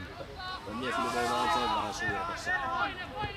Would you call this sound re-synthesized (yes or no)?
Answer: no